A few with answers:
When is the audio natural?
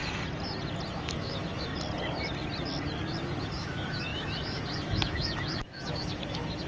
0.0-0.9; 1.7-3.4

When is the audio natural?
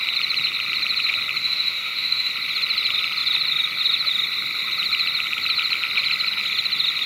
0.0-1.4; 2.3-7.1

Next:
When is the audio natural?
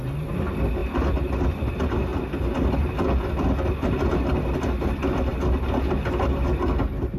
0.0-7.2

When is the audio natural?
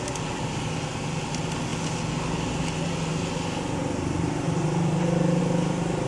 0.0-6.1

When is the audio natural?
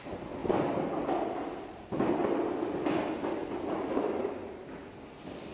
0.0-5.5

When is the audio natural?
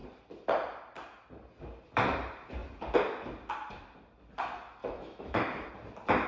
0.0-4.8; 5.7-6.3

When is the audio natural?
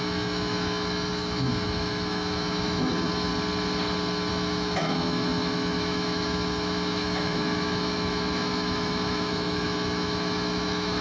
3.3-4.3